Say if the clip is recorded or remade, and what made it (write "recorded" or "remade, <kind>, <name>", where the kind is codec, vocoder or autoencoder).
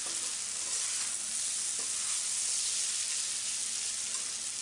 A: recorded